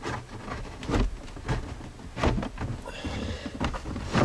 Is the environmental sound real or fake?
real